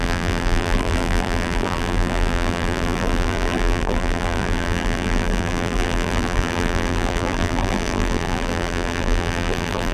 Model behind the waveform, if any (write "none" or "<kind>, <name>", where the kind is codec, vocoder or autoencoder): vocoder, BigVGAN v2